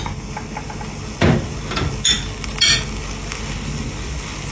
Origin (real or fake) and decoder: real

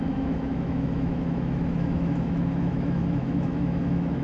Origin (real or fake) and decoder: fake, autoencoder, DAC-VAE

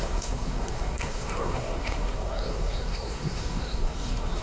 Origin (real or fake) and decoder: fake, codec, SNAC